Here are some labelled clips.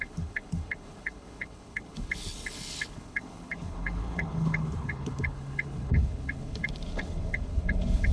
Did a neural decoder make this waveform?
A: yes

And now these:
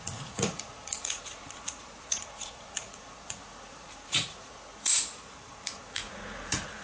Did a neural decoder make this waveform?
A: yes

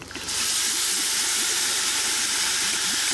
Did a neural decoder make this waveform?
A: no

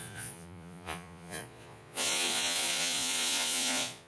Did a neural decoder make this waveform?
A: yes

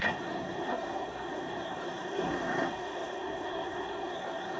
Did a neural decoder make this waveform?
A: yes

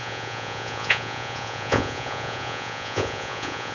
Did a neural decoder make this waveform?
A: yes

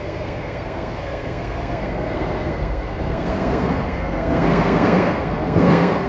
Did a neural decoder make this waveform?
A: yes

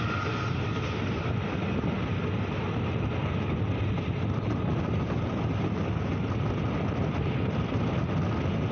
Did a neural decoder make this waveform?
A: no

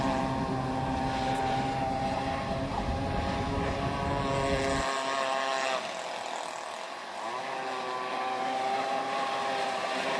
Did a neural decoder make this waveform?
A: no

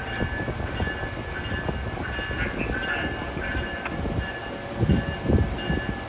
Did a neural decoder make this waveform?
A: no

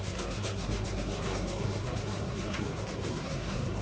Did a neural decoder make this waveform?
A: yes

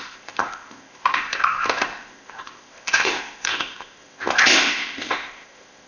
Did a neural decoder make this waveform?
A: yes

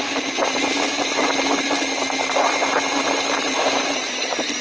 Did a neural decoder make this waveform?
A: no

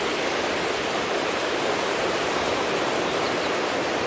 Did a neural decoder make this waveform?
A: no